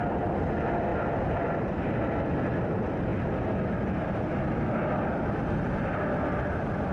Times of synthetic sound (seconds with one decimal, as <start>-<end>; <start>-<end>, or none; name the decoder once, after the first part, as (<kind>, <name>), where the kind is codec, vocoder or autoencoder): none